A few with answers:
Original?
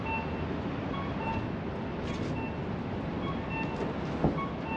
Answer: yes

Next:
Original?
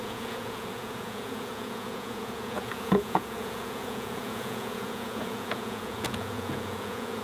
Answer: no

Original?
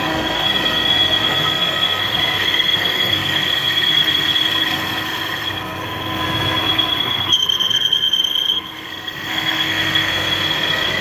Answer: no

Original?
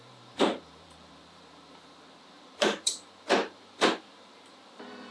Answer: no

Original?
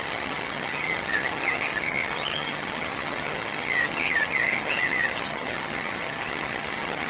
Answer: no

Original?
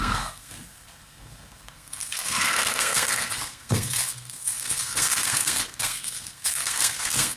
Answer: no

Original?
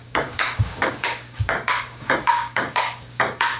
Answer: no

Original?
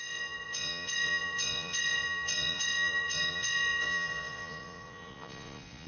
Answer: no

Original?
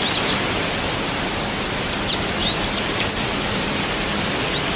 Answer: yes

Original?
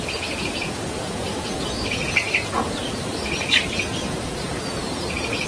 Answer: no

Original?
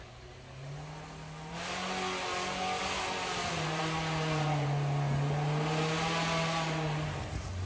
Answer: yes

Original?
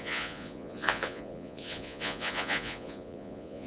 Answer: no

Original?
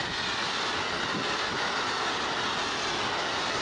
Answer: yes